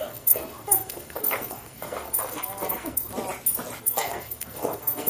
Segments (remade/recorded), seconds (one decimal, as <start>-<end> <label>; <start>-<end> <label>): 0.0-3.1 remade; 3.1-3.8 recorded; 3.8-5.1 remade